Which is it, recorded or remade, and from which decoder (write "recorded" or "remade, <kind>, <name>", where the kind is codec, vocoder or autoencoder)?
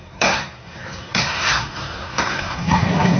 remade, codec, SNAC